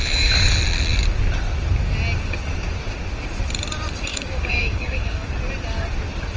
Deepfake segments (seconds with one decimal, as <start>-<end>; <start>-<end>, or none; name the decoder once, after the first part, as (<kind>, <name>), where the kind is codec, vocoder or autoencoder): 4.1-5.3 (codec, DAC)